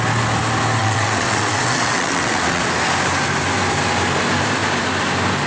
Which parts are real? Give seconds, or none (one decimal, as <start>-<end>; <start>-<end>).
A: 0.0-0.8; 2.6-5.5